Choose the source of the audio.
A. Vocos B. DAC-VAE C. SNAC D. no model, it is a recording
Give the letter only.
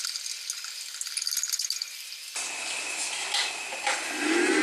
D